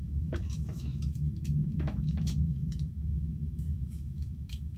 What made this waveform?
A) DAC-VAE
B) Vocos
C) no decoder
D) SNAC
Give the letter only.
A